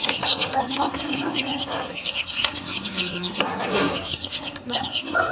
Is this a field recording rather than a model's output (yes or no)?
no